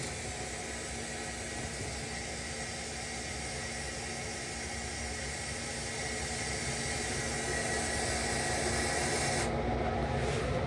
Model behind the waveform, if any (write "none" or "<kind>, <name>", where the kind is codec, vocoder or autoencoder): none